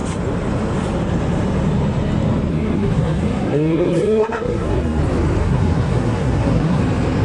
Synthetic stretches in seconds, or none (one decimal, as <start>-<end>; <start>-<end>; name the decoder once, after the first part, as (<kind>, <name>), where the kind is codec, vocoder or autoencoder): 2.5-5.0 (codec, SNAC); 5.4-6.8